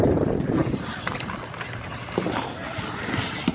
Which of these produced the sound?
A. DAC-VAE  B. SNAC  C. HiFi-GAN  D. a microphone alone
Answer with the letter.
D